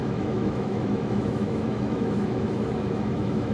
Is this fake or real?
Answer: fake